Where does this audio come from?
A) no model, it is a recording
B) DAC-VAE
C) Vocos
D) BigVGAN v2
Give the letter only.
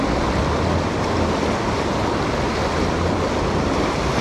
A